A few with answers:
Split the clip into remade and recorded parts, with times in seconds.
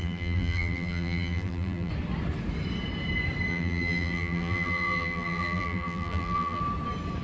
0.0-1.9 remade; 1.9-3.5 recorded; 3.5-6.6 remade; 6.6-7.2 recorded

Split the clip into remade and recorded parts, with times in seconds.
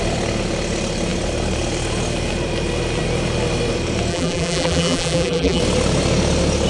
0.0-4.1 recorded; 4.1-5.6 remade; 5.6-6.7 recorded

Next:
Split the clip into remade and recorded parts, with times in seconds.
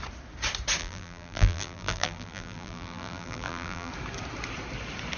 0.0-0.8 recorded; 0.8-3.9 remade; 3.9-5.2 recorded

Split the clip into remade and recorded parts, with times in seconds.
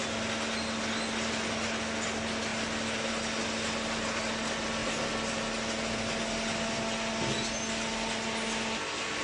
0.0-9.2 recorded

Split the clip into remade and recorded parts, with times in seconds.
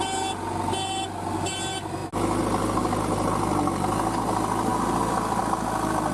0.0-4.7 recorded; 4.7-5.4 remade; 5.4-6.1 recorded